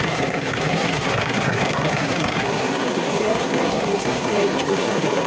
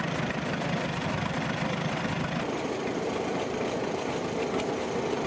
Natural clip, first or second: second